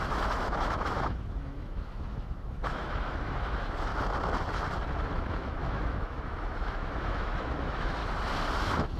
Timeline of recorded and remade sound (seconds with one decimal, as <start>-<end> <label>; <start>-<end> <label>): 0.0-3.9 remade; 3.9-5.1 recorded; 5.1-8.0 remade; 8.0-8.6 recorded; 8.6-9.0 remade